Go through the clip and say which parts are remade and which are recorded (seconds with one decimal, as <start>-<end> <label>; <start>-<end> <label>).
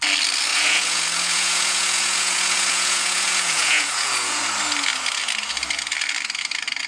0.0-0.5 recorded; 0.5-4.4 remade; 4.4-6.9 recorded